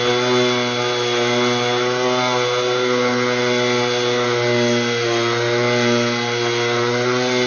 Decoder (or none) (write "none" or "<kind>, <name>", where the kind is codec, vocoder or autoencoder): none